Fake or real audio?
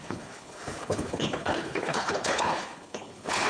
fake